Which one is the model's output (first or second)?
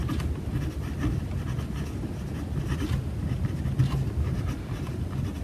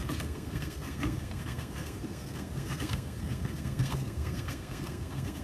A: second